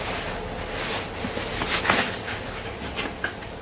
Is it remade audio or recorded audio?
recorded